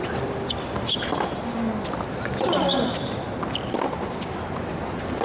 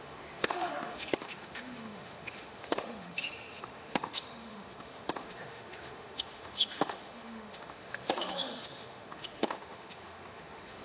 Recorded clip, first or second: first